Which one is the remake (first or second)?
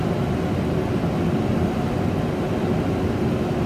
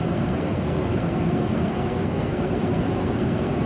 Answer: second